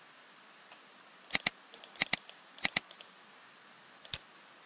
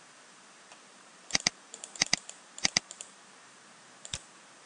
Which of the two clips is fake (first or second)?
second